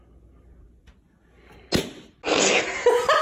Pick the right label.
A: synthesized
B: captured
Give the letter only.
B